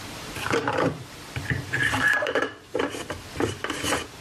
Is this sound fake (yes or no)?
yes